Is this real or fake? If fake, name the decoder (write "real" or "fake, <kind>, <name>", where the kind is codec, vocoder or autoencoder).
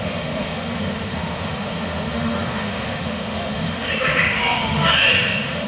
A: fake, autoencoder, DAC-VAE